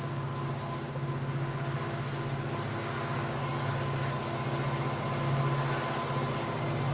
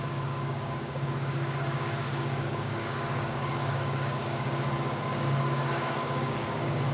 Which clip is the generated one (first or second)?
second